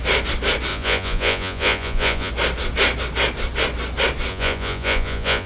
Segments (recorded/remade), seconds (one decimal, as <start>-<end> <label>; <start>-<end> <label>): 0.0-0.7 recorded; 0.7-2.3 remade; 2.3-4.3 recorded; 4.3-5.5 remade